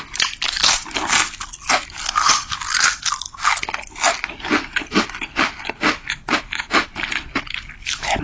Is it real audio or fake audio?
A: real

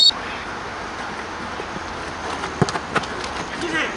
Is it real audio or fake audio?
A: real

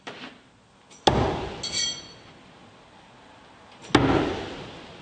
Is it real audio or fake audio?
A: real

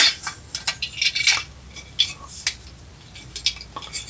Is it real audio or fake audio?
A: real